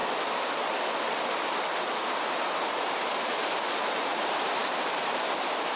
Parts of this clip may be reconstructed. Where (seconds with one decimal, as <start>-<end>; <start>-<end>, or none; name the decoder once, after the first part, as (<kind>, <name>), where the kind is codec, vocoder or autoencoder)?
1.3-5.8 (vocoder, BigVGAN v2)